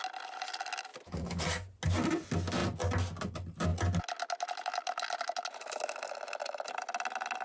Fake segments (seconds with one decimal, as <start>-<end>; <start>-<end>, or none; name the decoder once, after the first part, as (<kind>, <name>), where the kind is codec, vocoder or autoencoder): 0.9-1.4 (vocoder, BigVGAN v2)